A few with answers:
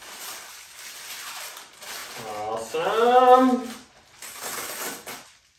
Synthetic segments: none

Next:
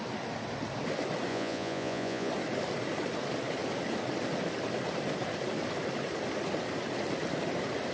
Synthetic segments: 1.3-2.3

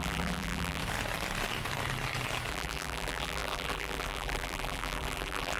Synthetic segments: 0.0-0.8; 2.5-5.6